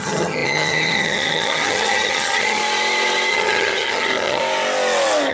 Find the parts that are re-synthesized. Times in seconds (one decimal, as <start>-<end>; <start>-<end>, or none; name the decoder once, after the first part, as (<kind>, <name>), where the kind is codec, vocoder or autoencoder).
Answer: 0.0-2.6 (vocoder, HiFi-GAN); 3.3-4.4